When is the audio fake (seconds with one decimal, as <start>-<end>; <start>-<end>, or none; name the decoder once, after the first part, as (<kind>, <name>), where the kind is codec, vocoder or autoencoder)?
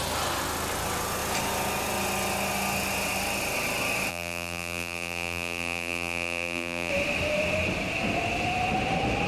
4.1-6.9 (vocoder, BigVGAN v2)